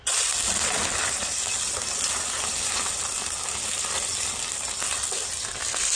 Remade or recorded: recorded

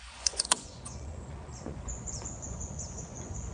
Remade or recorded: remade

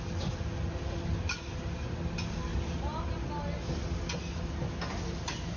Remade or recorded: recorded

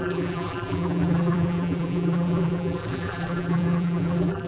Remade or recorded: remade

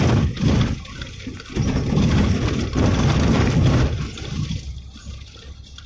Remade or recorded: recorded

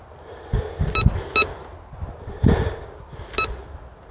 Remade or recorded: recorded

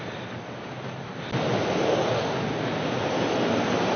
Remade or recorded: recorded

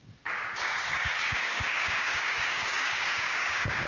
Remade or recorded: remade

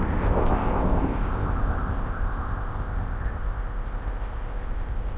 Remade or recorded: remade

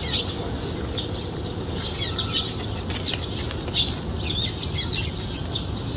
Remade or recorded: recorded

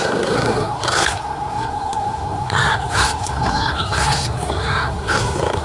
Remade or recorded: remade